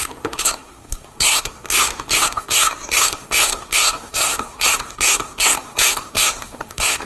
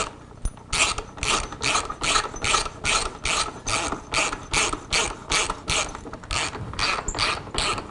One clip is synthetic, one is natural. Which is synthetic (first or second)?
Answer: first